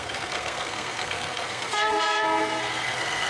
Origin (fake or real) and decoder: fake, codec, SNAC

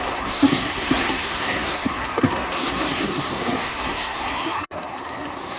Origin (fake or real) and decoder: fake, codec, SNAC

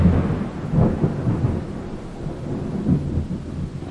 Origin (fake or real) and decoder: real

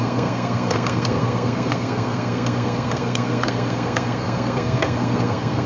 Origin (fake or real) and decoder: fake, codec, SNAC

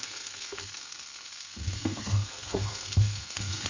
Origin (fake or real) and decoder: fake, codec, SNAC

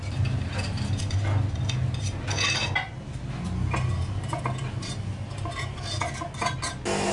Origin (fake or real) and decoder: real